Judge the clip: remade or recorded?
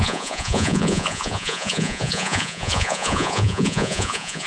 remade